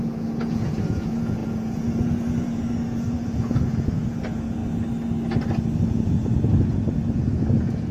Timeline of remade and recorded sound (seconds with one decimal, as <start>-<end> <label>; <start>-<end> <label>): 0.0-4.6 remade; 4.6-5.8 recorded; 5.8-7.9 remade